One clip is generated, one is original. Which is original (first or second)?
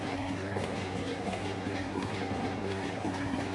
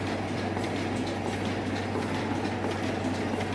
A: second